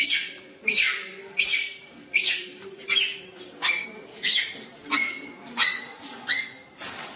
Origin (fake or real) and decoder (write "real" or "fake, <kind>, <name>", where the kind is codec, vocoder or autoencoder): fake, codec, DAC